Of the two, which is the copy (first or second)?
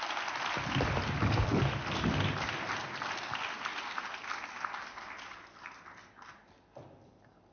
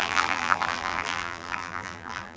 second